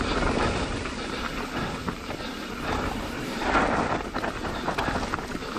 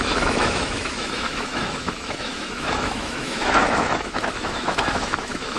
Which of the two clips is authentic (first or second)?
first